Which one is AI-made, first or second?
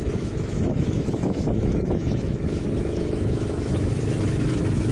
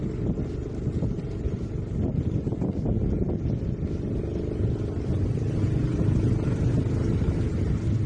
first